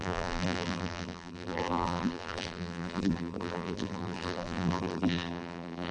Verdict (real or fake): fake